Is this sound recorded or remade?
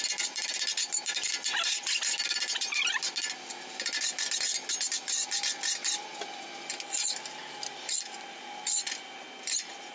recorded